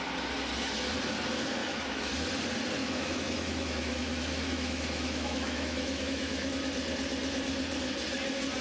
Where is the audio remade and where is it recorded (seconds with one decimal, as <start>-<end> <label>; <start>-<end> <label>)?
0.0-1.6 recorded; 1.6-2.1 remade; 2.1-2.8 recorded; 2.8-6.5 remade; 6.5-8.6 recorded